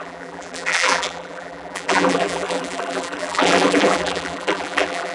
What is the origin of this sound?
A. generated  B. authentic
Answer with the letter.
A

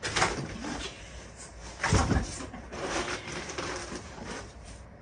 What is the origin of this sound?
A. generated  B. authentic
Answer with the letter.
A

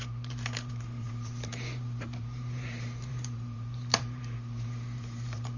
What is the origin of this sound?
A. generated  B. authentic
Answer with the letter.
A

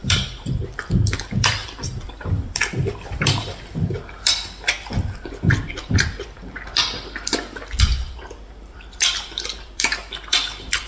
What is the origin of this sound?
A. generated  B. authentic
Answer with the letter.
A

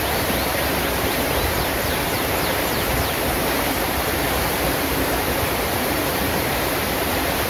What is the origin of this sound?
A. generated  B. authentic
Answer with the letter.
A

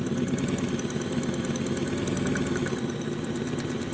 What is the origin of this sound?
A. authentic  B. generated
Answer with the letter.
A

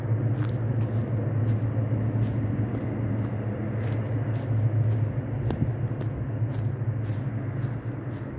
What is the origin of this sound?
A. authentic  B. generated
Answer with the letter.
A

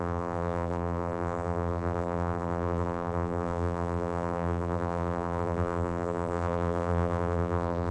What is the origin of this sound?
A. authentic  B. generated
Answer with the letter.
B